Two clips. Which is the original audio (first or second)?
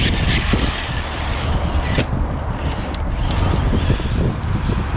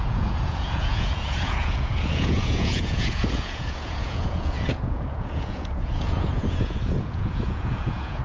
first